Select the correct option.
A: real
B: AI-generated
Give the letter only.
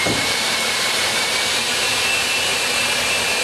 B